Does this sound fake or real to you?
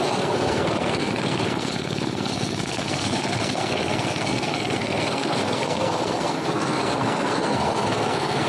fake